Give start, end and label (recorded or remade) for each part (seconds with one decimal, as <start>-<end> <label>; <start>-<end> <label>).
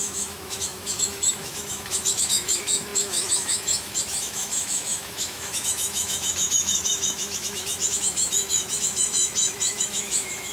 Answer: 0.0-10.5 remade